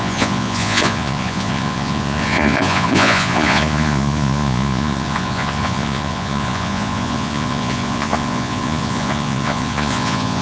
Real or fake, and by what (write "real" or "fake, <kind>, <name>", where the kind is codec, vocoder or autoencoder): fake, vocoder, Vocos